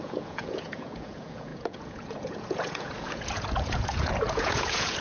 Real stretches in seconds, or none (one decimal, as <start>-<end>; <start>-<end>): none